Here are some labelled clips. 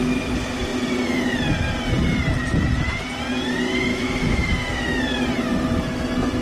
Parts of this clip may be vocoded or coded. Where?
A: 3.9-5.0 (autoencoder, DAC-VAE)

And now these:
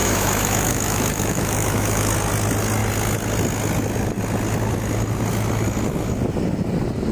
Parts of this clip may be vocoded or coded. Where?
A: 0.0-2.1 (autoencoder, DAC-VAE)

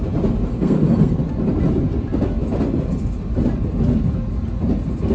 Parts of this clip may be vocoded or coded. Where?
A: 0.5-1.2 (codec, SNAC)

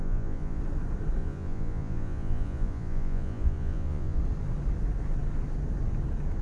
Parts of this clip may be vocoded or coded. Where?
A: 0.0-0.6 (vocoder, Vocos); 1.2-4.2